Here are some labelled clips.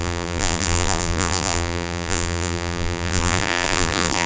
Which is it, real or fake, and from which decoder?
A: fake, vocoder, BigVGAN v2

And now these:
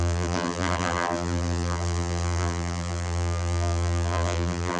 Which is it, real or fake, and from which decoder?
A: fake, vocoder, BigVGAN v2